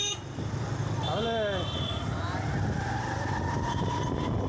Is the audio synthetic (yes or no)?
no